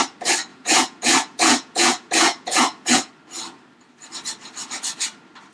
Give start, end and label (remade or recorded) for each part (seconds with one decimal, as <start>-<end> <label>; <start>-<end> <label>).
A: 0.0-0.5 recorded; 0.5-3.1 remade; 3.1-5.5 recorded